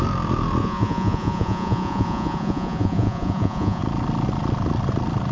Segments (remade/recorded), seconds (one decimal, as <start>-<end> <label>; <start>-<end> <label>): 0.0-0.6 recorded; 0.6-3.8 remade; 3.8-5.3 recorded